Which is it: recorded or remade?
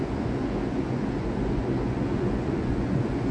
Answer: remade